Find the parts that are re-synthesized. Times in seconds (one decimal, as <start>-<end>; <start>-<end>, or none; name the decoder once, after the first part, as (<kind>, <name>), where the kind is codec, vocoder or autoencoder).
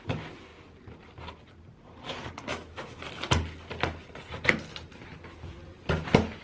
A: 2.5-3.0 (autoencoder, DAC-VAE)